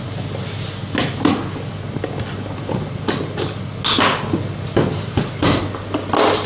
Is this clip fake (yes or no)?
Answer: no